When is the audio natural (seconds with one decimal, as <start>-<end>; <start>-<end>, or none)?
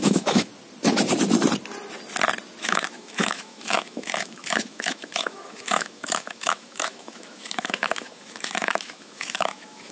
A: 0.5-2.6